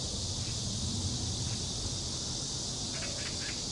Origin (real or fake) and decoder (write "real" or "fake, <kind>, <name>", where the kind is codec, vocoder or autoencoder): real